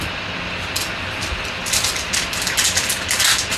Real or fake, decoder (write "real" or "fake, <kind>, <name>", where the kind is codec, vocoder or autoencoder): real